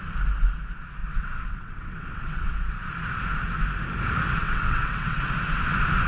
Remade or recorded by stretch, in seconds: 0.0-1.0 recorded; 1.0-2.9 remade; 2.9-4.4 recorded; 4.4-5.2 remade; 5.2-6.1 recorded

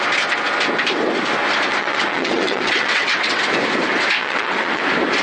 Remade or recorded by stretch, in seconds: 0.0-1.8 recorded; 1.8-3.4 remade; 3.4-4.2 recorded; 4.2-4.8 remade; 4.8-5.2 recorded

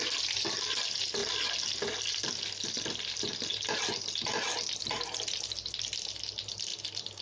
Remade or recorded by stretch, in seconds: 0.0-7.2 recorded

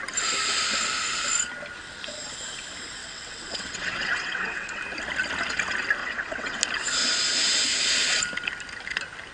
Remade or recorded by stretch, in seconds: 0.0-3.0 recorded; 3.0-4.8 remade; 4.8-6.0 recorded; 6.0-6.6 remade; 6.6-9.3 recorded

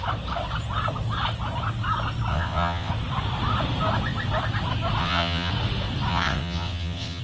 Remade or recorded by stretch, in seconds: 0.0-2.3 recorded; 2.3-2.9 remade; 2.9-5.0 recorded; 5.0-5.5 remade; 5.5-6.1 recorded; 6.1-7.2 remade

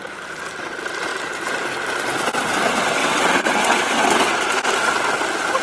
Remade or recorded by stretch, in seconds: 0.0-3.0 recorded; 3.0-4.3 remade; 4.3-5.6 recorded

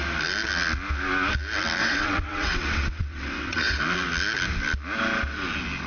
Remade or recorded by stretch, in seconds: 0.0-1.8 recorded; 1.8-3.8 remade; 3.8-5.9 recorded

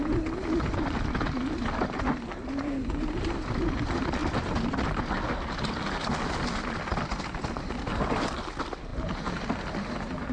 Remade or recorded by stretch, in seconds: 0.0-10.3 recorded